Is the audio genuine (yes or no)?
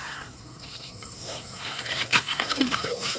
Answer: no